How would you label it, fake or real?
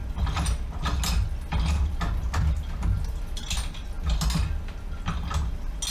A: real